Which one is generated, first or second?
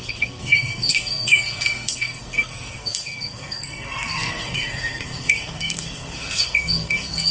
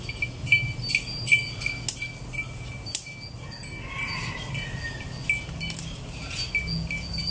first